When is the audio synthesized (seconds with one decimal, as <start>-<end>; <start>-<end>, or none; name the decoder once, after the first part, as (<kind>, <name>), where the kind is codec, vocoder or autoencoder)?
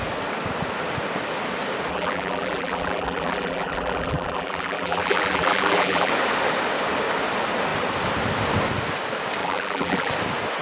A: 1.9-6.1 (vocoder, BigVGAN v2); 9.4-10.1